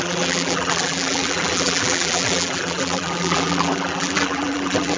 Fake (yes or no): yes